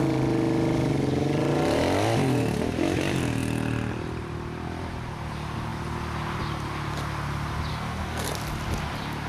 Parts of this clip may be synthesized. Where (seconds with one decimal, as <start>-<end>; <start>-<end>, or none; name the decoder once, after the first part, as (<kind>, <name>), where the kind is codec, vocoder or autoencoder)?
7.7-8.3 (codec, SNAC)

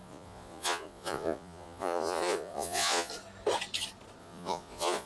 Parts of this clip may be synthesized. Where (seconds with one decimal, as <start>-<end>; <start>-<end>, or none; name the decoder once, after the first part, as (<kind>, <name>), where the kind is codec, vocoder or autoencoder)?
0.0-3.1 (vocoder, Vocos); 4.2-5.1

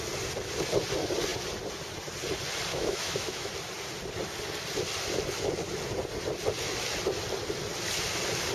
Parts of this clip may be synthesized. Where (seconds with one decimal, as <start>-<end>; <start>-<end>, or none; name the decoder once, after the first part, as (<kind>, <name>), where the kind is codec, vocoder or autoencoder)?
2.7-3.5 (autoencoder, DAC-VAE)

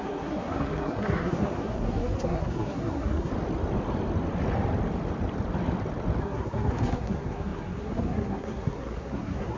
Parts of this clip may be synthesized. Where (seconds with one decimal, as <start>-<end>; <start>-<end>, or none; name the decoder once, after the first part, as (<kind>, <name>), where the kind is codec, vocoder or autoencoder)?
0.0-3.3 (codec, SNAC); 6.2-9.6

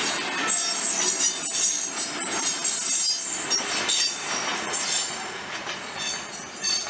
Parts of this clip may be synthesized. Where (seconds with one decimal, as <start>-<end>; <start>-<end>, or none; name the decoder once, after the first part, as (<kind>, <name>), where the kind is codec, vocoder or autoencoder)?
4.5-5.6 (vocoder, Vocos)

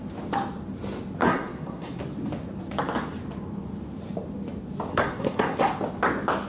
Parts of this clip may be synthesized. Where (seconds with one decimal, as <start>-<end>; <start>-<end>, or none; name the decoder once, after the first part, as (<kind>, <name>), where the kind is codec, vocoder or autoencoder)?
1.2-2.0 (codec, SNAC); 4.9-5.7

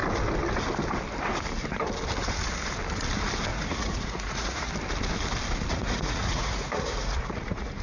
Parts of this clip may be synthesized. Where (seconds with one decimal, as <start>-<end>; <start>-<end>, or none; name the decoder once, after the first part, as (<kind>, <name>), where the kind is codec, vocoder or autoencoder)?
3.5-4.7 (vocoder, Vocos); 5.7-7.8